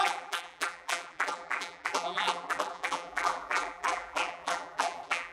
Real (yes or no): no